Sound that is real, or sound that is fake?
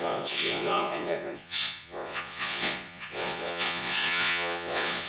fake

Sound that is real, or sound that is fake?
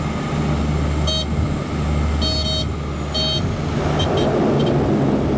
real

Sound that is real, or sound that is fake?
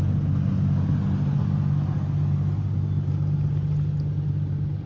real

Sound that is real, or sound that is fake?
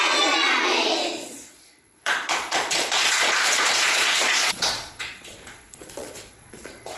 fake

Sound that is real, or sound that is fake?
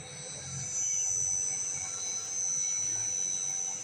real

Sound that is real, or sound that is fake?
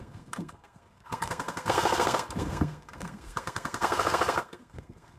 fake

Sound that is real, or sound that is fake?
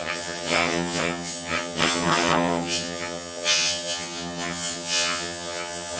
fake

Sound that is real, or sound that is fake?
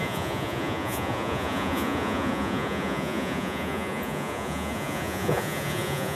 fake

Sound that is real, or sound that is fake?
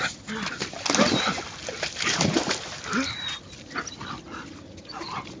real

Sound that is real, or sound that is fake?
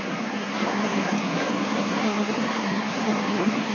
fake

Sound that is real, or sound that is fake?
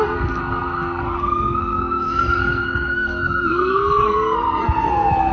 fake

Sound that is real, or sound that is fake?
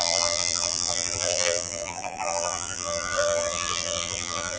fake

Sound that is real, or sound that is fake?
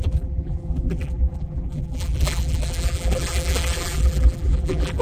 fake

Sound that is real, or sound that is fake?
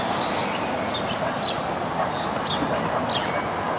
real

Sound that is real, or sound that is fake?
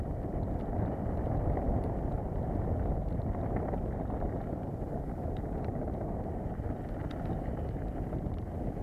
real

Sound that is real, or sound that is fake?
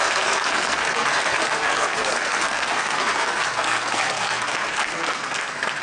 fake